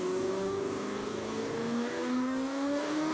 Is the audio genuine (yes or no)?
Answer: no